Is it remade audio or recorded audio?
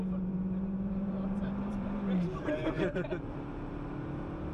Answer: remade